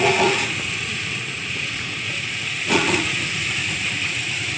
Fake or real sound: fake